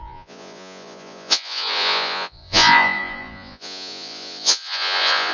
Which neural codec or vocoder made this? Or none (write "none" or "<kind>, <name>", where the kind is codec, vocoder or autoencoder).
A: vocoder, Vocos